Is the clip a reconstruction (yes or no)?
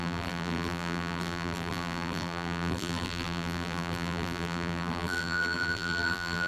yes